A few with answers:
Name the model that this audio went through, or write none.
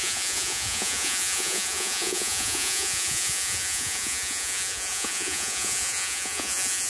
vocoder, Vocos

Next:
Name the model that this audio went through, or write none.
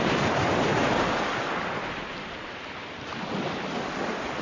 none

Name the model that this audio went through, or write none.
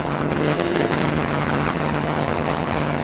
vocoder, HiFi-GAN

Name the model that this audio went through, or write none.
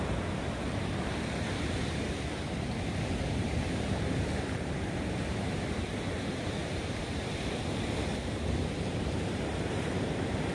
vocoder, BigVGAN v2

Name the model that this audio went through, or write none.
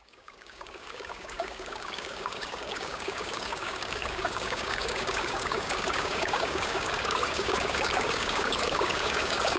codec, DAC